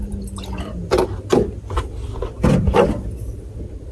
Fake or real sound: real